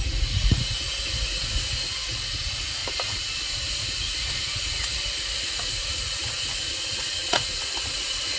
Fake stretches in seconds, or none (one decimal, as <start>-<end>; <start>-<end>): 0.0-2.8; 3.7-8.4